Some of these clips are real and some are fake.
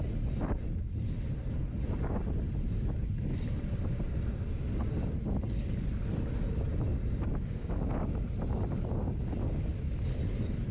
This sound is real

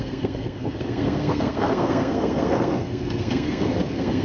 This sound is fake